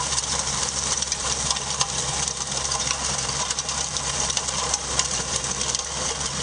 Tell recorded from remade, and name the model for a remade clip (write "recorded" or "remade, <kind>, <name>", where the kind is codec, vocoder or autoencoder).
remade, vocoder, BigVGAN v2